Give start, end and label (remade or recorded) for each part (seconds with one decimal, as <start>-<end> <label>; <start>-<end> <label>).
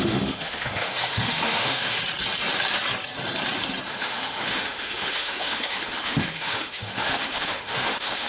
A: 0.0-2.0 remade; 2.0-3.9 recorded; 3.9-8.3 remade